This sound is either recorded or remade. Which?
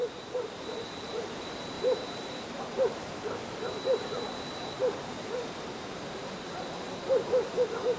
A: remade